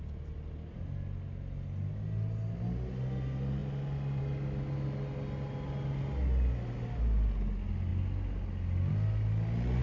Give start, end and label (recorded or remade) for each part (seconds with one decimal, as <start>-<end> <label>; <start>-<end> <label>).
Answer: 0.0-9.8 recorded